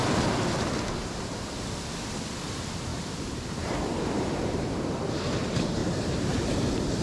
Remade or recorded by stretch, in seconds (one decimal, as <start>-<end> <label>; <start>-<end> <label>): 0.0-2.9 recorded; 2.9-4.8 remade; 4.8-5.8 recorded; 5.8-6.6 remade; 6.6-7.0 recorded